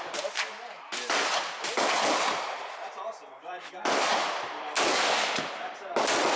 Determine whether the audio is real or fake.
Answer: real